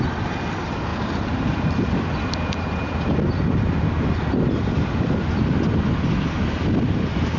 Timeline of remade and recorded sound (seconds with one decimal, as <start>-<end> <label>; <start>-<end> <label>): 0.0-0.9 recorded; 0.9-5.3 remade; 5.3-7.4 recorded